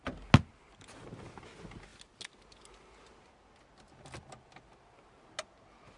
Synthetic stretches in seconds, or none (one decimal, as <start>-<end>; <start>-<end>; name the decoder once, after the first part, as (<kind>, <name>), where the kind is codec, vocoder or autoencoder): none